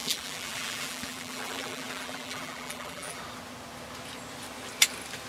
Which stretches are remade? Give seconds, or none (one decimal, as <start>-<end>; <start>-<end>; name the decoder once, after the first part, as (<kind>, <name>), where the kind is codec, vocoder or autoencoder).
0.0-3.2 (vocoder, BigVGAN v2)